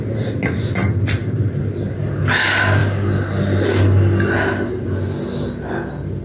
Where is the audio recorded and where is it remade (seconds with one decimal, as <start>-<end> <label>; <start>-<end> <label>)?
0.0-1.2 recorded; 1.2-2.2 remade; 2.2-6.2 recorded